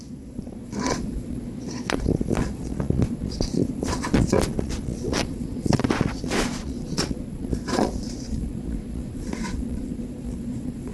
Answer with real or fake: fake